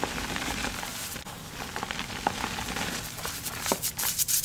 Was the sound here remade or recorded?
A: remade